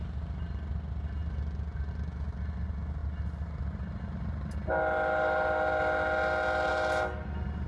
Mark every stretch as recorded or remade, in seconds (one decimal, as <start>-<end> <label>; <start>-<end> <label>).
0.0-7.7 recorded